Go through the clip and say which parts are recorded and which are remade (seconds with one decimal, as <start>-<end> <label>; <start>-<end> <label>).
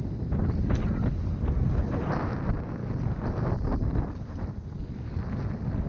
0.0-5.9 recorded